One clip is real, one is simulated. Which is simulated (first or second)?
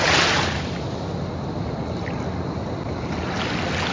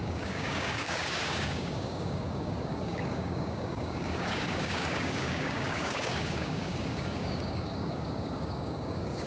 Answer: second